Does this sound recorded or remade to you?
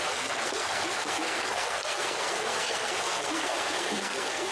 remade